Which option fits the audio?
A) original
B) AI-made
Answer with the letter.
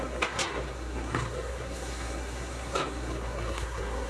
B